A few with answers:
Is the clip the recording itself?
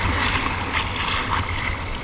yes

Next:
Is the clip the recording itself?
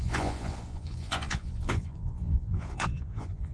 no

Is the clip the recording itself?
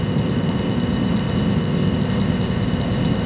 no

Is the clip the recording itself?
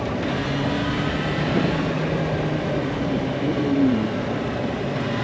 yes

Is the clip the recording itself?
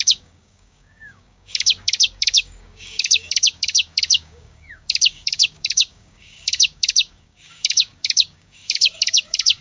no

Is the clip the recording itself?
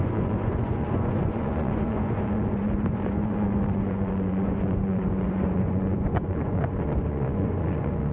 no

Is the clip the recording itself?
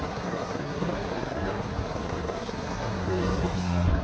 no